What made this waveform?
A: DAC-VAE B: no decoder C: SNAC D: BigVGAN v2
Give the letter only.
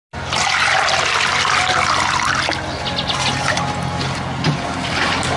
B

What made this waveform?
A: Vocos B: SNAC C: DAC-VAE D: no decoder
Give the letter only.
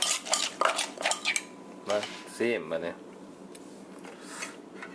D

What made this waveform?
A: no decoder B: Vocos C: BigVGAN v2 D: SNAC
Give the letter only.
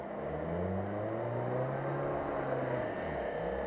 A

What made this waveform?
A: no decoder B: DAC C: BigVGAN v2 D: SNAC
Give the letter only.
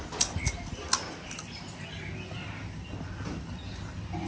A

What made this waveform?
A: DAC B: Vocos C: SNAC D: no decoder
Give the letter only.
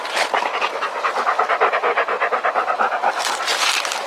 D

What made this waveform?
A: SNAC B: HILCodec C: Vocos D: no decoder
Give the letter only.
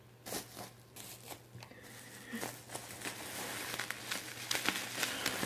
D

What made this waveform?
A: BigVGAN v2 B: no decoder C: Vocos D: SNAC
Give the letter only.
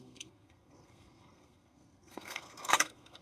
D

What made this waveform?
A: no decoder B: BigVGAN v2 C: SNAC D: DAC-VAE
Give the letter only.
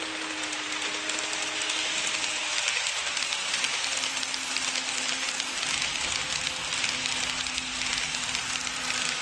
A